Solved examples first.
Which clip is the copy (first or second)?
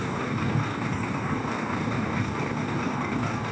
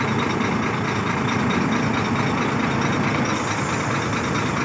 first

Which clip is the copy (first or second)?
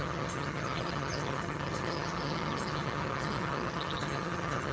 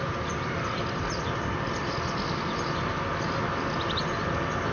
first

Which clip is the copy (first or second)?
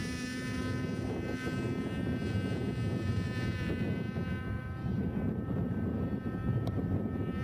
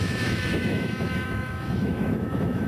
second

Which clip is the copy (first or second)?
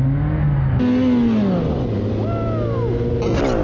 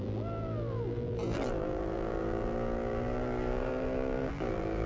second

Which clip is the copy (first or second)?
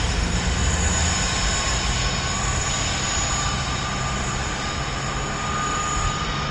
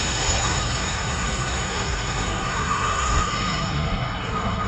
second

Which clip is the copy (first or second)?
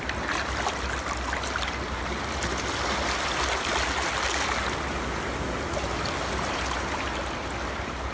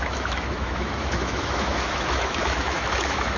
second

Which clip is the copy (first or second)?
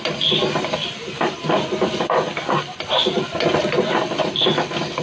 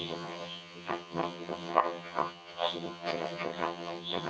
second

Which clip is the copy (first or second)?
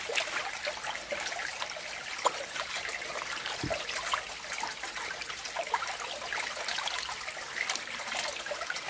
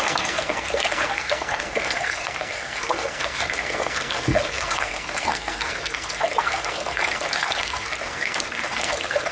second